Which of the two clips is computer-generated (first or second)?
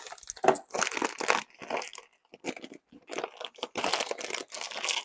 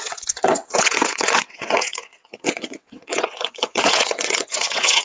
second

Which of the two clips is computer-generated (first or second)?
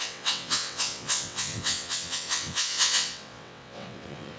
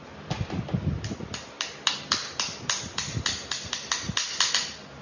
first